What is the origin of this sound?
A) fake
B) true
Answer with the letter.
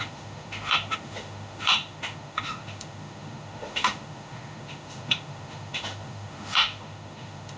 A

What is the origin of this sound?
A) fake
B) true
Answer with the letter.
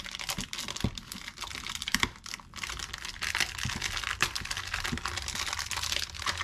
B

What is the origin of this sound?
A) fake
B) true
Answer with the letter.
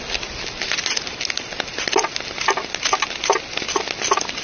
B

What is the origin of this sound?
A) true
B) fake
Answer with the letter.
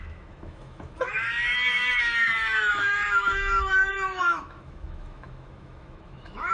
B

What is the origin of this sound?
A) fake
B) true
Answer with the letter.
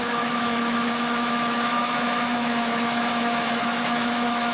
A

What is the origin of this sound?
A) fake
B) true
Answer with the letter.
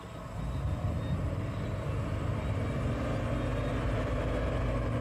B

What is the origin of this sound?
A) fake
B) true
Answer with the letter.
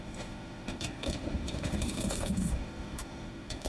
A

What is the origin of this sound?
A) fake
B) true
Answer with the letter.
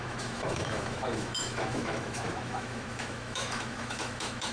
A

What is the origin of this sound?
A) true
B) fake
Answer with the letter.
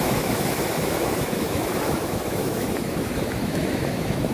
B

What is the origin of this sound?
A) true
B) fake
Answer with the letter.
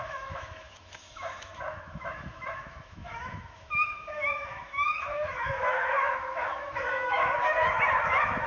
B